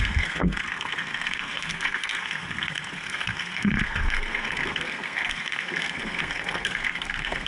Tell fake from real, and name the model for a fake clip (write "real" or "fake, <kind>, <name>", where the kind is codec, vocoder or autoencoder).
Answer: fake, codec, SNAC